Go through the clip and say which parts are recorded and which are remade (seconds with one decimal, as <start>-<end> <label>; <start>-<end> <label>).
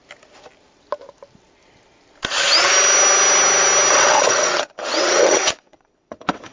0.0-3.9 recorded; 3.9-6.5 remade